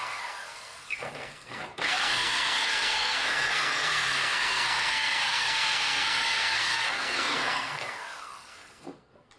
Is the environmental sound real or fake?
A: fake